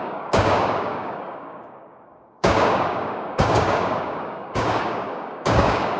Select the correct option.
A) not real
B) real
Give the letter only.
A